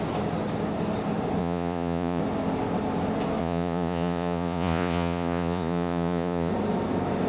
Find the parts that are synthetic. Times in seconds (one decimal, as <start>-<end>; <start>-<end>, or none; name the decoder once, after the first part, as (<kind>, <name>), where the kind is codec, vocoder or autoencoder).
1.4-2.2 (vocoder, Vocos); 3.4-6.5